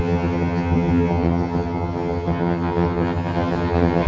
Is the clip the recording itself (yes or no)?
no